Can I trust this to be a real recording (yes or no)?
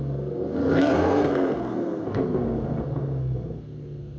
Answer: no